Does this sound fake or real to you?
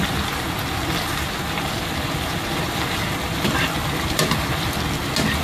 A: real